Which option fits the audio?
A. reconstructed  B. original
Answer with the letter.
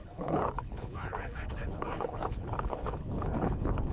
A